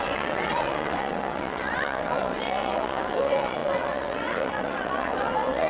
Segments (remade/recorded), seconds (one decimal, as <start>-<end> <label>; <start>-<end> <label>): 0.0-5.7 remade